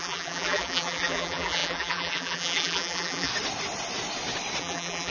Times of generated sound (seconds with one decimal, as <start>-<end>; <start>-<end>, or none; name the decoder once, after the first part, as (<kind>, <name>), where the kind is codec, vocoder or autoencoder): 0.0-3.3 (vocoder, BigVGAN v2); 4.6-5.1